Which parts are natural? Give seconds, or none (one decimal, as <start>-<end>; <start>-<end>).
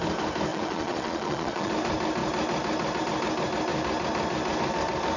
0.0-0.5; 1.7-5.2